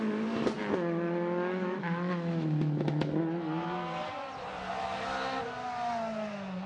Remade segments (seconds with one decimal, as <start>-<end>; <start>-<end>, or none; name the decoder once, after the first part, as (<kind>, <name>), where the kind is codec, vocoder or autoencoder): 0.6-3.2 (autoencoder, DAC-VAE); 4.8-5.4